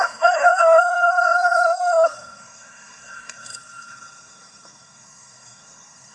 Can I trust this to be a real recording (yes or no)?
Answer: no